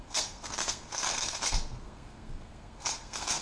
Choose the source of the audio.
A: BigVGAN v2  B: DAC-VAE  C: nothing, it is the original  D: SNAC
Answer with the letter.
D